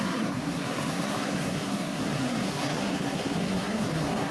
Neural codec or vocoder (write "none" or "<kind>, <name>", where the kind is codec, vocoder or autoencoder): codec, SNAC